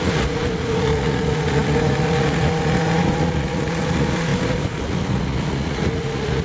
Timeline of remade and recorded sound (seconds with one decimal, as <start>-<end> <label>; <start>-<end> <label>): 0.0-6.4 remade